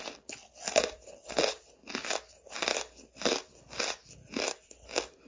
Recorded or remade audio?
recorded